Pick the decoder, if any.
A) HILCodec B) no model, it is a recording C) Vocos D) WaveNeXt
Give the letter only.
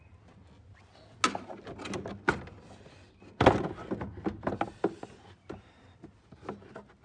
B